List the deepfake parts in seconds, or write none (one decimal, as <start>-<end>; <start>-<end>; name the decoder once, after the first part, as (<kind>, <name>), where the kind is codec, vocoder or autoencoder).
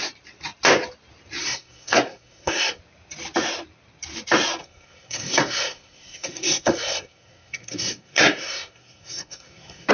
1.4-2.8 (codec, SNAC); 4.6-9.9